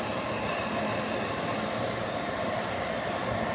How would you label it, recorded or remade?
recorded